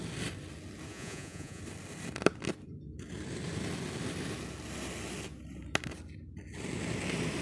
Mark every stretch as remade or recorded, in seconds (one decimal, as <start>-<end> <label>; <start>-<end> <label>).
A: 0.0-0.9 recorded; 0.9-1.6 remade; 1.6-7.4 recorded